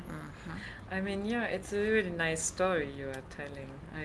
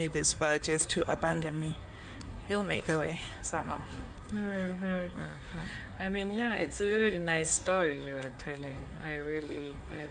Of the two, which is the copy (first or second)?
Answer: second